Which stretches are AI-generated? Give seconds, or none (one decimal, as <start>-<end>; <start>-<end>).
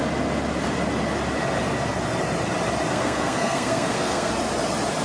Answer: 2.9-4.3